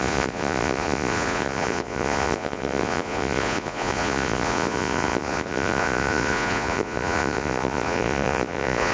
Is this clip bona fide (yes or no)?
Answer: no